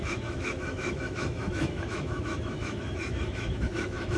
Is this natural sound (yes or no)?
no